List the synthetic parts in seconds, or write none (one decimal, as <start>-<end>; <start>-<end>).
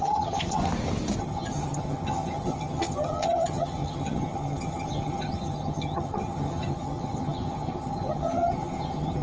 0.0-0.6; 1.2-9.2